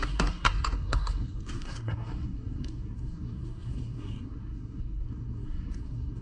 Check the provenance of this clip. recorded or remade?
remade